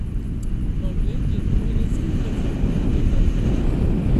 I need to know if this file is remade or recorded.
recorded